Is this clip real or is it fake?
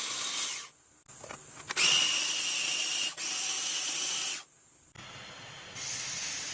real